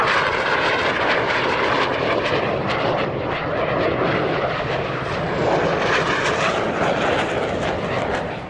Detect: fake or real fake